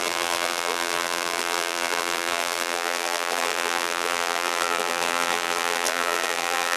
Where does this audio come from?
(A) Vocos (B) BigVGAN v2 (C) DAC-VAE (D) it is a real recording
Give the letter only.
B